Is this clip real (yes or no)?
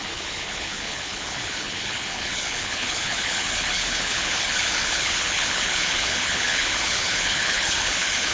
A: no